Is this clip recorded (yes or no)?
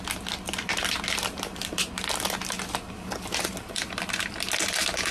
yes